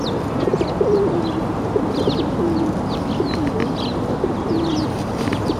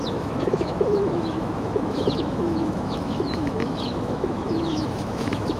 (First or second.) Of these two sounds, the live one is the first